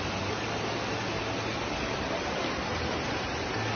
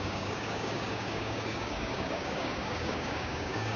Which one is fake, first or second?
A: second